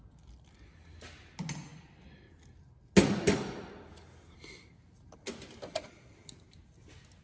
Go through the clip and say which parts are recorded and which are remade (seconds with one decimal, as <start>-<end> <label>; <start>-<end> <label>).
0.0-7.2 recorded